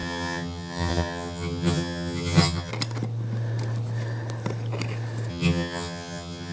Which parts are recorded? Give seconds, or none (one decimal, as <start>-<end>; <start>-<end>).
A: 2.7-5.3